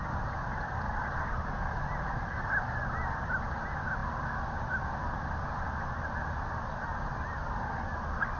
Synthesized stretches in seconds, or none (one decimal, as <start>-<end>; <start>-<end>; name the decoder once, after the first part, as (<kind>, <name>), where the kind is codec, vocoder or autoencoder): none